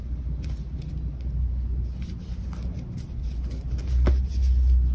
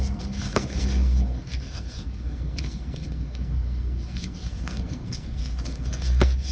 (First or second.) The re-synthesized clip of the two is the second